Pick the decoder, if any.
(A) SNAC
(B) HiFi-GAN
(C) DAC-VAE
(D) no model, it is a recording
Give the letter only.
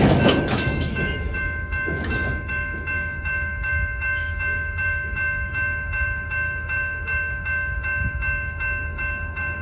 C